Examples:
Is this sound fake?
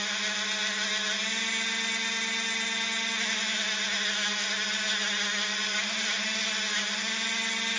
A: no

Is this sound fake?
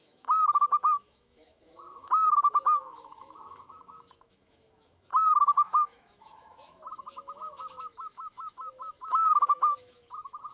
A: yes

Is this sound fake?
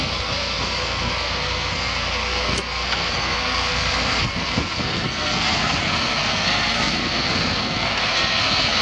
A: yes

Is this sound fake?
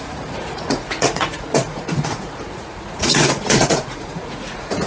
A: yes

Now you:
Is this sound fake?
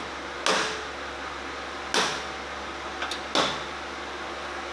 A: no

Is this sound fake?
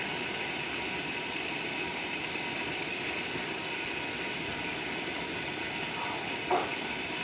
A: no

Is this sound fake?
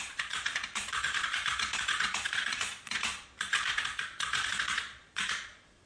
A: yes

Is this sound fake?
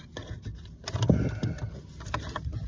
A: no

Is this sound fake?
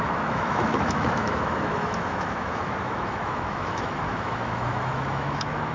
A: yes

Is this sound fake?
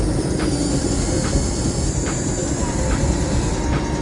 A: no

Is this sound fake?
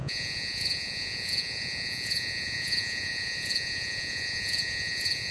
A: yes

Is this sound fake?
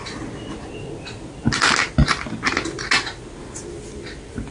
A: no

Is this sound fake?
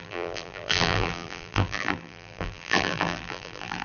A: yes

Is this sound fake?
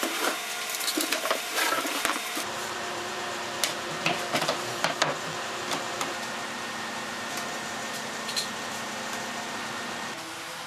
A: yes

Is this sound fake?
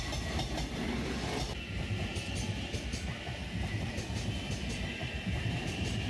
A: no